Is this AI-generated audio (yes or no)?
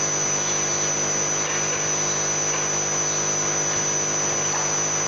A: no